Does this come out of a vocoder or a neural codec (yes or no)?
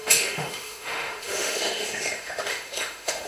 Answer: yes